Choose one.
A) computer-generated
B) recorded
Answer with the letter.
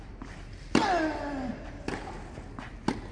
B